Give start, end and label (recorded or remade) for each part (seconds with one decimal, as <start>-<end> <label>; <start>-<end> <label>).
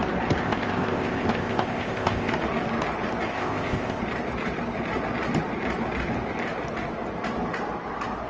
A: 0.0-0.4 recorded; 0.4-2.3 remade; 2.3-3.3 recorded; 3.3-4.0 remade; 4.0-8.3 recorded